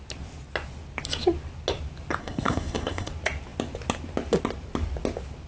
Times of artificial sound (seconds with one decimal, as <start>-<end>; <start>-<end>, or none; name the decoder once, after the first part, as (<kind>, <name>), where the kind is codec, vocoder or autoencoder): 2.2-3.1 (codec, SNAC)